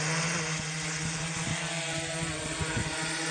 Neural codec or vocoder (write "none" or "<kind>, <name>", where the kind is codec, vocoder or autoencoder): none